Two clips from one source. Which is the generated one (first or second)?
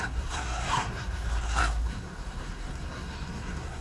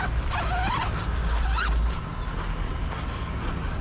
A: first